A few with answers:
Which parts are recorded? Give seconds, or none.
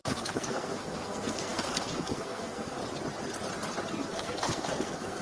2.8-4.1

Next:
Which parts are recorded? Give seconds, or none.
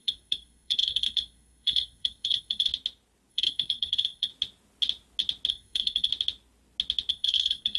2.7-3.3; 4.3-5.5; 6.1-7.1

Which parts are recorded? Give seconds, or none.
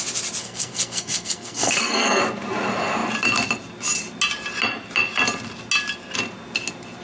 0.0-0.4; 2.2-7.0